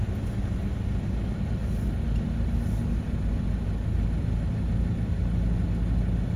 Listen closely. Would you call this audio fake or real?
real